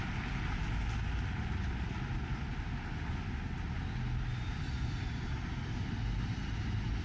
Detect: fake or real real